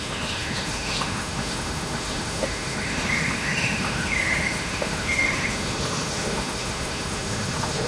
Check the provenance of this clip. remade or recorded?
remade